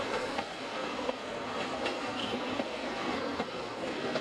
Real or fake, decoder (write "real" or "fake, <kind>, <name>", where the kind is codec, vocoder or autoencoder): fake, codec, SNAC